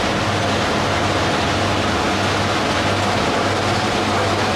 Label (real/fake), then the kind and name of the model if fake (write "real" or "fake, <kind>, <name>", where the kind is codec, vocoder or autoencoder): real